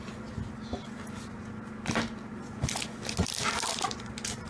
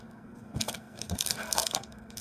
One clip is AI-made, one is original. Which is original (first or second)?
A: first